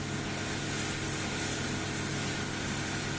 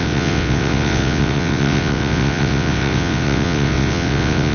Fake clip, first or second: second